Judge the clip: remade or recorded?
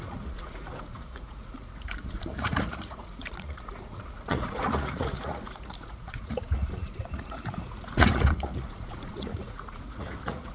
remade